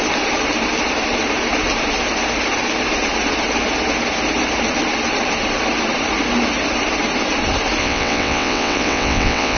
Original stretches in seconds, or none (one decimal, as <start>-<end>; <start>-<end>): 0.0-7.8

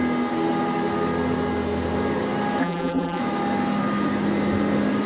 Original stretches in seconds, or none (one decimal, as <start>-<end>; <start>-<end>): 0.0-2.6; 3.2-5.1

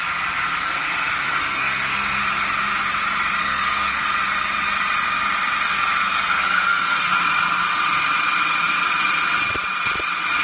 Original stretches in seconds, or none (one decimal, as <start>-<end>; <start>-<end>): 0.0-1.4; 2.2-3.4; 4.0-6.4; 7.1-10.4

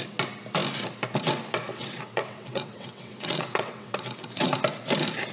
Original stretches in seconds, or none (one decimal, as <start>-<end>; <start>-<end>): 0.0-1.7; 4.5-5.3